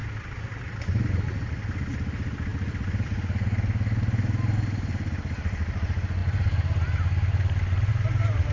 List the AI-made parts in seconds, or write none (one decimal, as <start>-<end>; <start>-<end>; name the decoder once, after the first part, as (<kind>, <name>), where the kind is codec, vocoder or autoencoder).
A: none